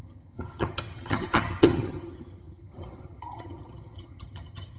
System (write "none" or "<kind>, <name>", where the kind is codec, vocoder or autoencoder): vocoder, HiFi-GAN